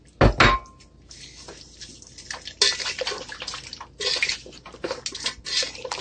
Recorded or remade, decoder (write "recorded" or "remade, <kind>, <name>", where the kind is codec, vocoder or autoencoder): recorded